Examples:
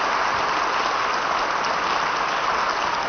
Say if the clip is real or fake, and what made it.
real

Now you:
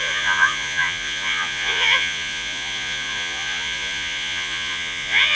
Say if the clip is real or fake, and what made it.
fake, vocoder, Vocos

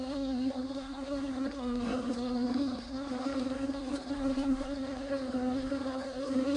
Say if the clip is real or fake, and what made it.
fake, codec, SNAC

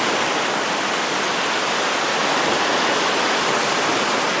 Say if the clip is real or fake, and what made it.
fake, vocoder, BigVGAN v2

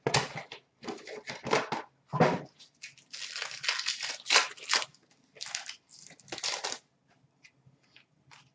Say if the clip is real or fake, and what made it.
real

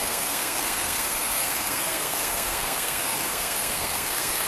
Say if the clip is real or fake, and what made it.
fake, codec, SNAC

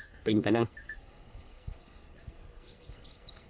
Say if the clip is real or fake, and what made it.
fake, codec, SNAC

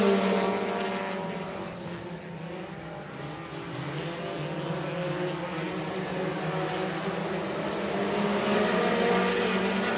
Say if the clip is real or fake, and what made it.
real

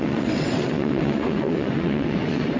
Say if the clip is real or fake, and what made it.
fake, vocoder, WaveNeXt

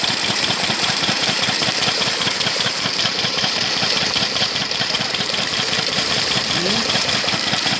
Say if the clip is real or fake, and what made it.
fake, vocoder, BigVGAN v2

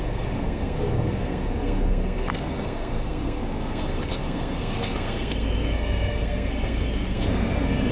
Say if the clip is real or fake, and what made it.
fake, codec, SNAC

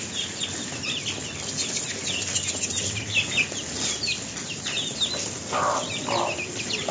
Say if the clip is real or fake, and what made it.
real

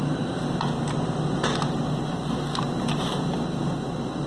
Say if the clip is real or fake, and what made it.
real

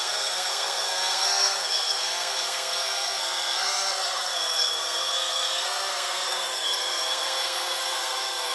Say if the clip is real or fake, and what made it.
fake, codec, SNAC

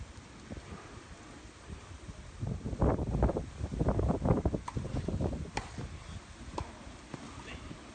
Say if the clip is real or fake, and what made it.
real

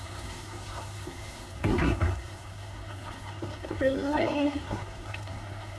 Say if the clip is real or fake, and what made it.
fake, codec, SNAC